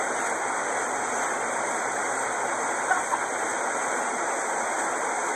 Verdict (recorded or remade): remade